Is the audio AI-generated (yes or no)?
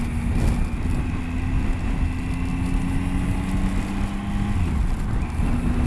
no